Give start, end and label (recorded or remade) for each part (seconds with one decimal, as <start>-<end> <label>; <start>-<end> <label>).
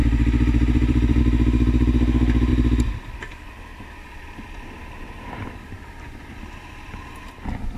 0.0-1.2 remade; 1.2-2.5 recorded; 2.5-6.6 remade; 6.6-7.8 recorded